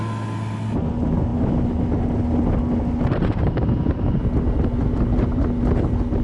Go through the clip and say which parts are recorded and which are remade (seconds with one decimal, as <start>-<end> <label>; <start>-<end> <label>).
0.0-6.2 recorded

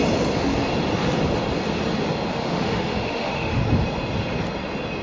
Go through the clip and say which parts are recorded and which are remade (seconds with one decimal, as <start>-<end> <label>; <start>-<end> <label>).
0.0-2.3 recorded; 2.3-3.6 remade; 3.6-5.0 recorded